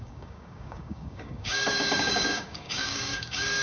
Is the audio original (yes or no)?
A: no